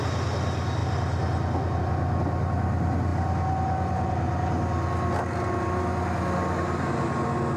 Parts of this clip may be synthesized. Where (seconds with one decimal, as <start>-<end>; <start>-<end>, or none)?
none